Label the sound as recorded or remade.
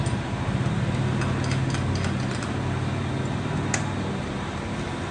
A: recorded